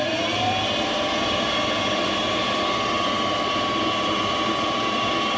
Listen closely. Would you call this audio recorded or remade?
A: remade